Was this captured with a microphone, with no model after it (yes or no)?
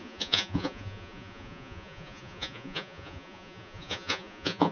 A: no